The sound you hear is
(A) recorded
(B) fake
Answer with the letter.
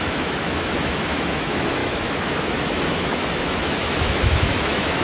B